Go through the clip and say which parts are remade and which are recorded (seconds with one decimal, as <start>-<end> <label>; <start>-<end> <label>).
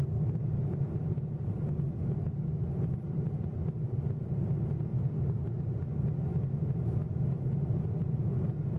0.0-8.8 recorded